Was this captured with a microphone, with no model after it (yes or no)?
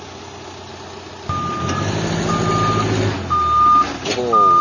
yes